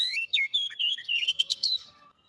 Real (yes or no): no